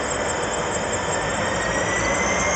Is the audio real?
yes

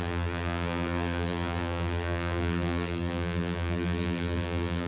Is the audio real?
no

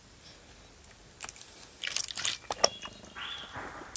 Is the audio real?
yes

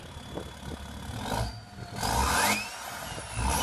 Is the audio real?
yes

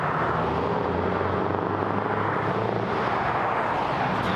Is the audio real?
yes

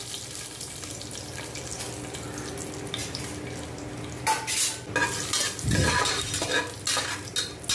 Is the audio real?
yes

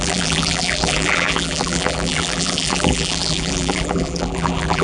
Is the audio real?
no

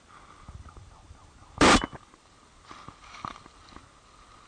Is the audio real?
yes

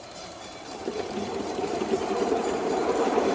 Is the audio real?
no